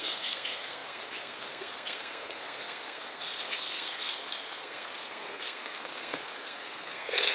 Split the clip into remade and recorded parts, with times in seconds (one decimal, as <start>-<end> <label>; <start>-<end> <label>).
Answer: 0.0-7.3 remade